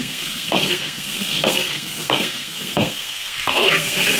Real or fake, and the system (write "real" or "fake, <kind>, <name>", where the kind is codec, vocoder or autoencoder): fake, codec, SNAC